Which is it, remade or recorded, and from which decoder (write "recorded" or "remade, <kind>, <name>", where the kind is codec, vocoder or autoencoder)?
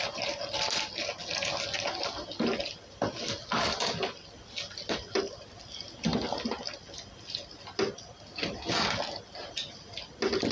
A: recorded